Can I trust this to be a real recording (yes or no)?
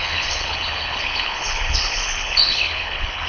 no